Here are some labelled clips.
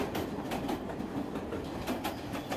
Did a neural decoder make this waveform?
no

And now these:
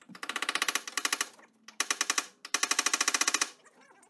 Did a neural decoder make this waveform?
no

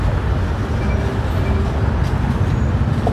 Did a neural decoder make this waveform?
no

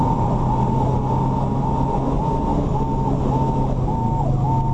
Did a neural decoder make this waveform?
no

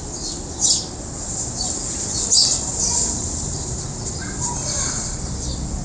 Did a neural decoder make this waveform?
yes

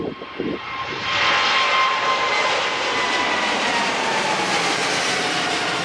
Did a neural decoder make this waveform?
yes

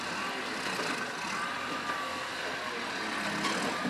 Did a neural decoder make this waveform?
no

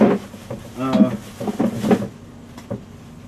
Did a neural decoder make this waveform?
no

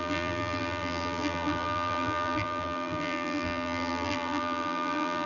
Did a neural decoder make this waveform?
yes